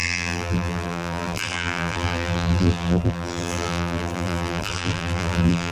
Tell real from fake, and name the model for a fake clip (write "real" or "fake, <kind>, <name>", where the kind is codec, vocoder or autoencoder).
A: fake, vocoder, BigVGAN v2